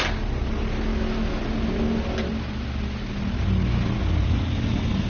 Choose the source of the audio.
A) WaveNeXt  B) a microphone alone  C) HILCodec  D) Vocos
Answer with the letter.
B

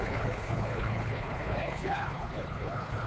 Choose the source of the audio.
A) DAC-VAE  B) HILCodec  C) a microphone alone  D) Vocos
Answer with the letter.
B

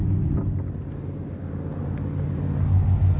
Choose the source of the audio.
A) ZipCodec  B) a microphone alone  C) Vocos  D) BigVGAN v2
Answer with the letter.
B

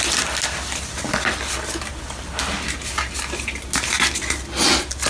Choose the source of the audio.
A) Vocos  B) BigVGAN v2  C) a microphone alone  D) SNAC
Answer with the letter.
C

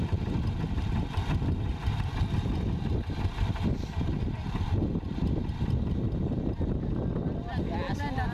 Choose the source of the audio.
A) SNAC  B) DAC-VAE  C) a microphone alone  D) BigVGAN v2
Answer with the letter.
C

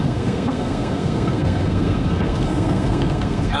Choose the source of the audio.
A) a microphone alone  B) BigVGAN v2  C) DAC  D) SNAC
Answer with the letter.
D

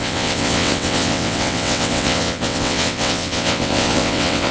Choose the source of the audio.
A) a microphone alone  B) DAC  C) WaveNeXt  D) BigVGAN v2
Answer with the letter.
C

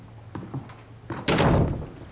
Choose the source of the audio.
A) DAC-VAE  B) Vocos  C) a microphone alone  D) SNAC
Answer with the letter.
C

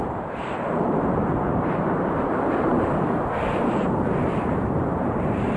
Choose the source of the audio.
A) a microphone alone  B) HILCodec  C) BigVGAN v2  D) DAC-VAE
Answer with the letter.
C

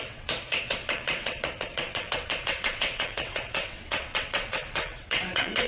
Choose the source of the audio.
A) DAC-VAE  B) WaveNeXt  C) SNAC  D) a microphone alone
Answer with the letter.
B